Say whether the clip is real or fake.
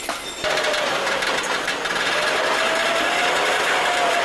real